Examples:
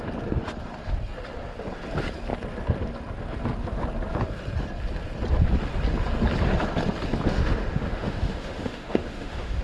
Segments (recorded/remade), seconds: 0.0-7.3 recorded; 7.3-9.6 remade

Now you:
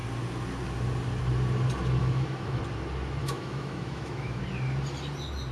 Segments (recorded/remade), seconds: 0.0-2.0 recorded; 2.0-2.6 remade; 2.6-3.2 recorded; 3.2-4.4 remade; 4.4-5.5 recorded

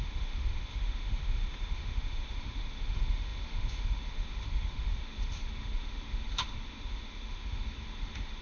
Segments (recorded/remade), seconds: 0.0-8.4 remade

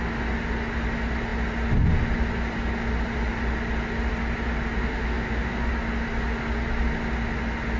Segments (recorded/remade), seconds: 0.0-4.8 recorded; 4.8-5.7 remade; 5.7-7.8 recorded

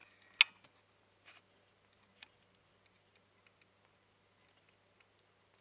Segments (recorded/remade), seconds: 0.0-5.6 recorded